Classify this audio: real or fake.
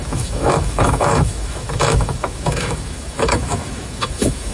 fake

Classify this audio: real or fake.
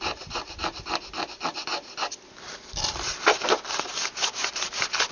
real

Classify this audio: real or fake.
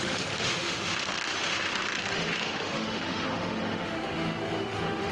fake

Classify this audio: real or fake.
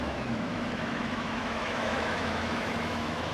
fake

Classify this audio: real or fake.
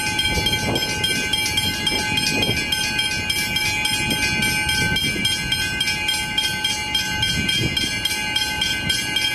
real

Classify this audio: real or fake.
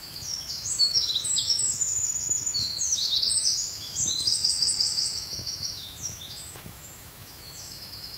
fake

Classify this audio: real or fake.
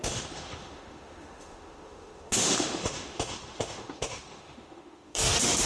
fake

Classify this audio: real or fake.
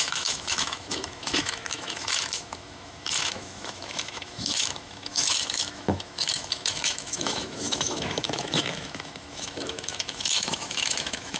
fake